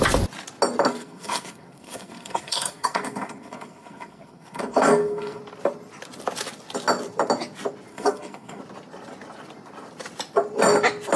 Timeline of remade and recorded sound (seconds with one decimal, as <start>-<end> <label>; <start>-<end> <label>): 0.0-0.9 recorded; 0.9-5.4 remade; 5.4-7.9 recorded; 7.9-8.6 remade; 8.6-11.2 recorded